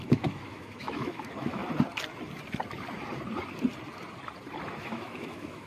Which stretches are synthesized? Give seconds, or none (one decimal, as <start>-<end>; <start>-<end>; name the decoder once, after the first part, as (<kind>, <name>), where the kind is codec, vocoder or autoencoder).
0.0-1.6 (autoencoder, DAC-VAE); 4.8-5.7